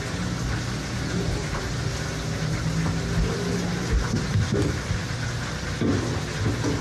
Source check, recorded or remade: recorded